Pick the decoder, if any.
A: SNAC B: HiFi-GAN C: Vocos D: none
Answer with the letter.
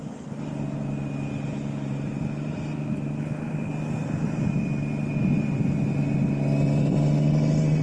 D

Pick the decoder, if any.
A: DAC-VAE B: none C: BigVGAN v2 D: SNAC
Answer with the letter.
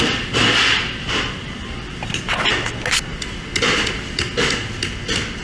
B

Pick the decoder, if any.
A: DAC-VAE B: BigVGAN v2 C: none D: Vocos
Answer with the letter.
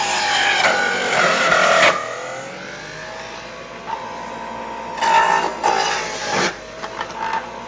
C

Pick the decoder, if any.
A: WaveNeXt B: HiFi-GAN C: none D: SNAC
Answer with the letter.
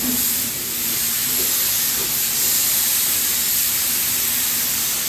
C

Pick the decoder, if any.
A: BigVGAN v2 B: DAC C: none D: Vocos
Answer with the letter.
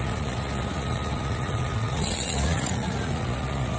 D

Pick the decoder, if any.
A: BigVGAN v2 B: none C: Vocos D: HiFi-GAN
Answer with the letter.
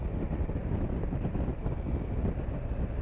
B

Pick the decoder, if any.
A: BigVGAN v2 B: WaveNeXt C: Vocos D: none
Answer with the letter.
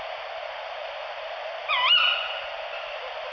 D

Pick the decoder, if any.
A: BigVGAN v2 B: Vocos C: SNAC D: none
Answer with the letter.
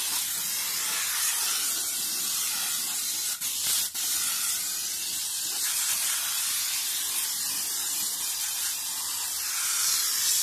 D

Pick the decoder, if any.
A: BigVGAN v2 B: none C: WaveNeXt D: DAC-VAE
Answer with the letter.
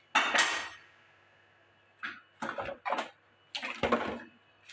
B